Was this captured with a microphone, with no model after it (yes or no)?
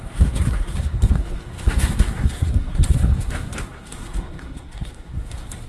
no